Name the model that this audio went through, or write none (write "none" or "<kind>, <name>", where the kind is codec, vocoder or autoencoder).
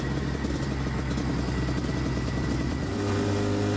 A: none